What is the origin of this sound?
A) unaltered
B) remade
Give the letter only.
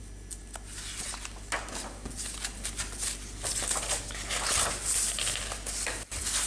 A